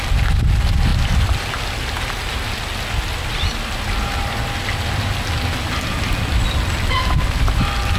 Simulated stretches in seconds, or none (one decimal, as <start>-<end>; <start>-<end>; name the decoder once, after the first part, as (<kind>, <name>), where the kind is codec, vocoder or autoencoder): none